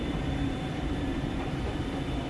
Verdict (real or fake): fake